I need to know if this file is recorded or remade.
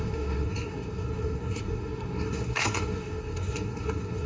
remade